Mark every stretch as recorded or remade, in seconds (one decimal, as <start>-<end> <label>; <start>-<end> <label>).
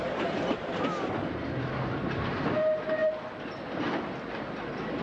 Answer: 0.0-5.0 recorded